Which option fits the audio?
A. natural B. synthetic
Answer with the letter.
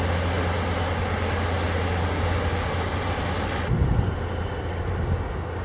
A